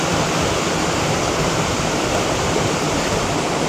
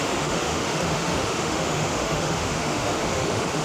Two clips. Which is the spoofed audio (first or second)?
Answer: second